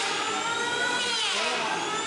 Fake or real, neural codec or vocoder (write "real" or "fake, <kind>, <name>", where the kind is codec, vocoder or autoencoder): real